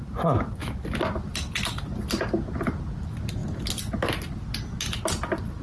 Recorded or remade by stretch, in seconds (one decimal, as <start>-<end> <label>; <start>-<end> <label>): 0.0-5.6 recorded